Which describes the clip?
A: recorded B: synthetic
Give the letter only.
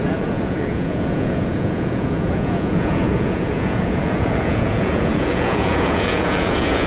B